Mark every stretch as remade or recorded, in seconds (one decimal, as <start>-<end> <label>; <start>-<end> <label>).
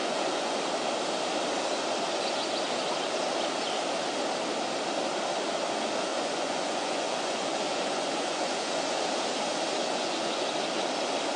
0.0-0.6 remade; 0.6-6.1 recorded; 6.1-9.0 remade; 9.0-9.7 recorded; 9.7-10.5 remade; 10.5-11.4 recorded